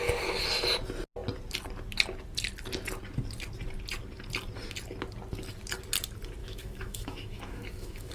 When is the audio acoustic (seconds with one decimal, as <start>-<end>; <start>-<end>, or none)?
0.0-6.4